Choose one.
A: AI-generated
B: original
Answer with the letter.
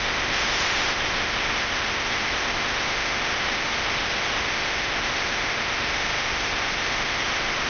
A